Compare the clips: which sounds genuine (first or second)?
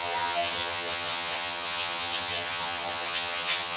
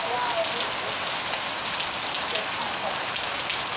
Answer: second